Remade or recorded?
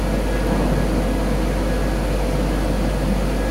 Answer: recorded